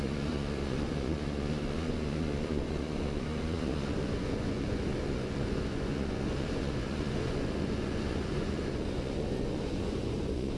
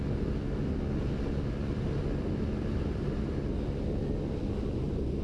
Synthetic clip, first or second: first